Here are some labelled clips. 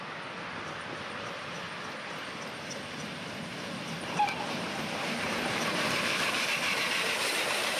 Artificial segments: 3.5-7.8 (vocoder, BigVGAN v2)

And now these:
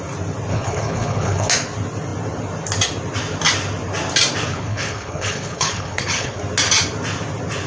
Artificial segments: 0.5-1.5 (codec, HILCodec); 4.5-6.4

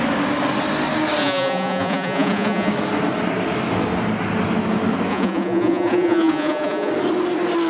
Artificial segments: 1.2-2.7 (vocoder, Vocos); 5.1-6.9

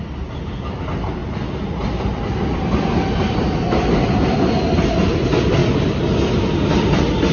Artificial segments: none

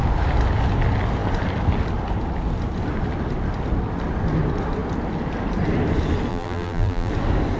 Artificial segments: 6.3-7.1 (vocoder, BigVGAN v2)

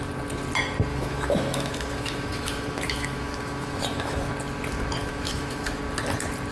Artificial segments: 0.9-4.3 (autoencoder, DAC-VAE); 5.0-5.8

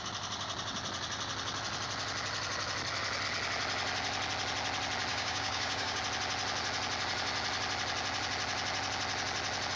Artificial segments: 5.1-6.0 (codec, DAC)

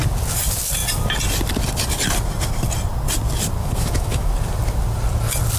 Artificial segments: 3.6-4.3 (autoencoder, DAC-VAE)